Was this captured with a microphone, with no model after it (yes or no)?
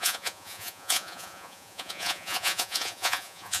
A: no